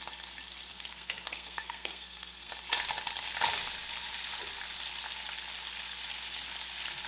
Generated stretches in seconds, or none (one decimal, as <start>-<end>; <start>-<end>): 0.7-2.5